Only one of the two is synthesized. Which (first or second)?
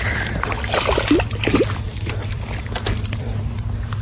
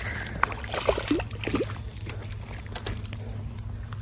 first